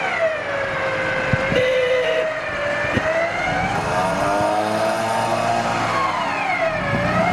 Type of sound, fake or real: real